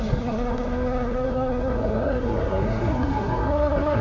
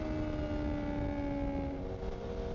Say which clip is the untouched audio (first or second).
second